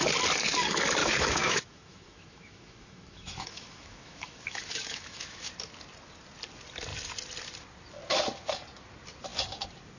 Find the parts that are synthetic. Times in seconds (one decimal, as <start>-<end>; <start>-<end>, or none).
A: 1.0-5.5